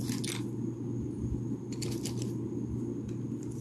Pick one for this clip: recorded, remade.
recorded